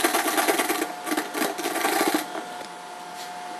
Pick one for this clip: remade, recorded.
recorded